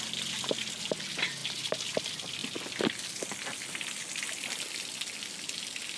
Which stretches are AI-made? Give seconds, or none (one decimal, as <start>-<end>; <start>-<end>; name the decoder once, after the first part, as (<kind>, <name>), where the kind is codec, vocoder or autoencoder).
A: none